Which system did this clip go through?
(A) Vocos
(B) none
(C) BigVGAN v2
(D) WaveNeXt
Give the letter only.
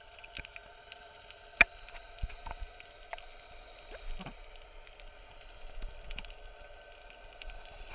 B